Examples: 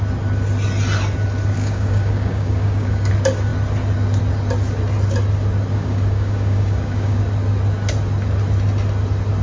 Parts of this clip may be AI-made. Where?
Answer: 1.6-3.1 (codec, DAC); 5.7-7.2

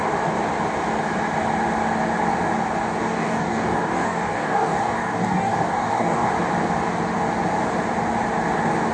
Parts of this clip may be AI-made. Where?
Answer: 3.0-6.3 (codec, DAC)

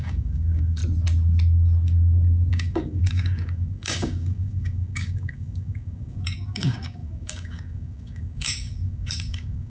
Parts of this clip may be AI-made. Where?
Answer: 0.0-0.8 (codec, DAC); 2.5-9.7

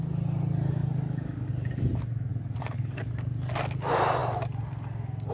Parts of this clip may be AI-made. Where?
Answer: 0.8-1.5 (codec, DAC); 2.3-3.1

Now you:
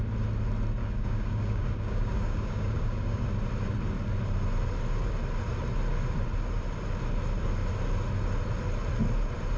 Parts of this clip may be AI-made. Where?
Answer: 0.8-3.3 (codec, DAC)